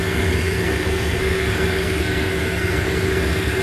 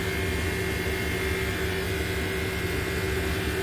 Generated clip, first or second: first